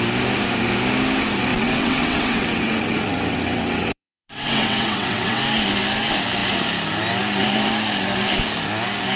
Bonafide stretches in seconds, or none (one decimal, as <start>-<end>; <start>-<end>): 0.0-1.5; 5.4-9.2